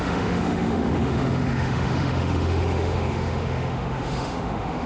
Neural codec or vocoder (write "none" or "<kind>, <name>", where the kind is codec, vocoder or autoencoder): autoencoder, DAC-VAE